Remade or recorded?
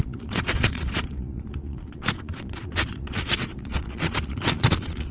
remade